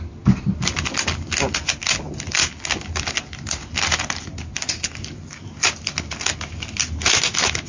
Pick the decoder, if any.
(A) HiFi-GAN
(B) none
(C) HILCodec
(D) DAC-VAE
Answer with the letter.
B